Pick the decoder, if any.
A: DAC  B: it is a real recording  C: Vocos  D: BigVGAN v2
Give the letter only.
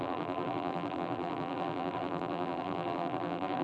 D